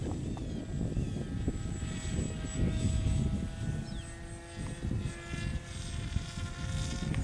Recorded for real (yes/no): yes